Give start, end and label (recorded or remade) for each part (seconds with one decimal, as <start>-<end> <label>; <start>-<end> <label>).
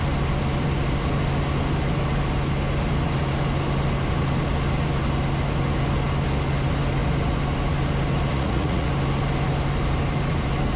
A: 0.0-8.3 recorded; 8.3-8.9 remade; 8.9-10.8 recorded